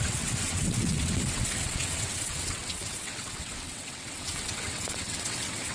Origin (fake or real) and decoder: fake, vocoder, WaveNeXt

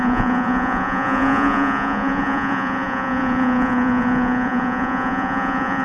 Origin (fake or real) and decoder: fake, vocoder, Vocos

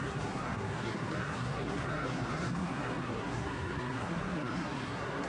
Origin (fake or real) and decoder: fake, codec, SNAC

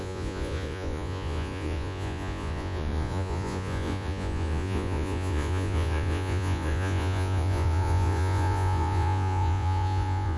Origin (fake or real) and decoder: fake, vocoder, Vocos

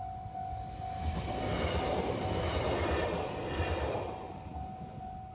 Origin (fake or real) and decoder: real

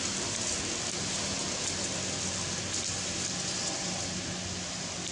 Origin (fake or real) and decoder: real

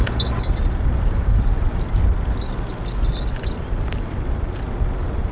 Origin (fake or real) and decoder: real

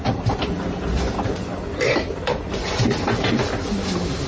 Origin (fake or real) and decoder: real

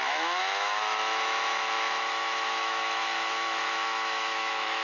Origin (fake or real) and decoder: fake, autoencoder, DAC-VAE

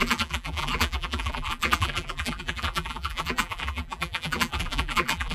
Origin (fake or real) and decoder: fake, vocoder, BigVGAN v2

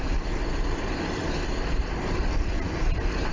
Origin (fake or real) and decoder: real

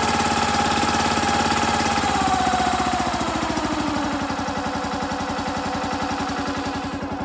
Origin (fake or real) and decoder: real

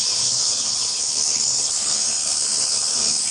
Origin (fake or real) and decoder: fake, codec, HILCodec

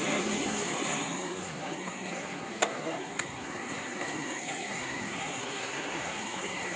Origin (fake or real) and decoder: fake, codec, SNAC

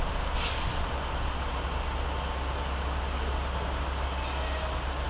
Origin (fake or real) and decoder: real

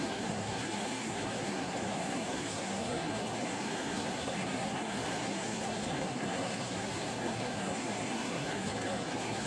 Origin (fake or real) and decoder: fake, codec, SNAC